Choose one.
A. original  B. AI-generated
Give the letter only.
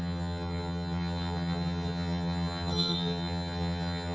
B